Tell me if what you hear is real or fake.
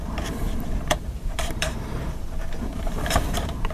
fake